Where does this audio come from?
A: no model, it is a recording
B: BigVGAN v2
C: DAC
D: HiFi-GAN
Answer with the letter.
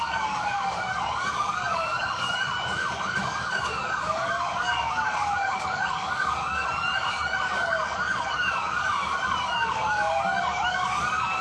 C